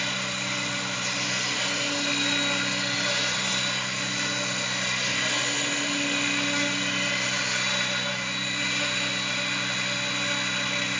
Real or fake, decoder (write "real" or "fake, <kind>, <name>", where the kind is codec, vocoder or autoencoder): real